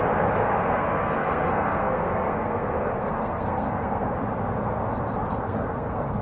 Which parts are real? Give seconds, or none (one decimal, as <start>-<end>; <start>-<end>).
0.0-0.4; 4.1-5.3

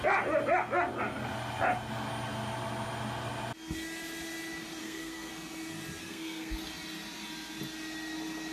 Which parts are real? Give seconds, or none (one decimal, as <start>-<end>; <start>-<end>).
0.0-4.8; 5.3-6.0; 6.6-8.5

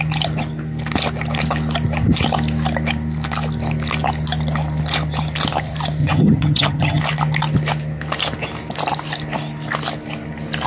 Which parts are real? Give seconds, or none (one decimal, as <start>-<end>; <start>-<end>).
0.0-6.0; 7.0-10.7

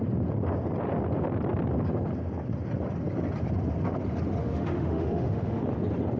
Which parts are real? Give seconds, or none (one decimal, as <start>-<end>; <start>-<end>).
0.0-4.4; 5.6-6.2

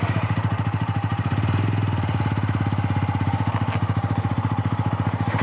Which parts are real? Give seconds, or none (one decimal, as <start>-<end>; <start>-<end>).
1.1-4.3

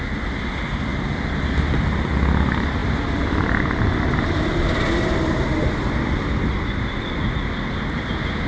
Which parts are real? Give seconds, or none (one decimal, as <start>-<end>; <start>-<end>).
0.0-8.5

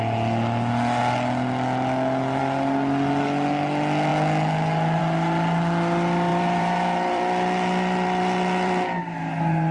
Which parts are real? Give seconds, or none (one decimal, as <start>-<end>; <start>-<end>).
0.0-6.3; 9.2-9.7